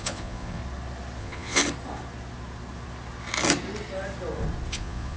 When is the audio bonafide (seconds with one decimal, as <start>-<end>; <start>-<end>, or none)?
0.6-1.2; 1.6-4.7